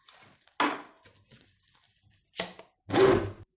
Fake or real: real